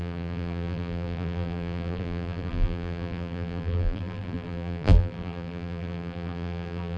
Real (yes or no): no